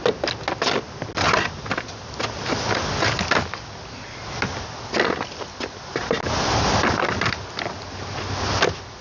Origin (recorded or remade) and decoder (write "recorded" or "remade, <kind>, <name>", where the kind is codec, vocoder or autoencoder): recorded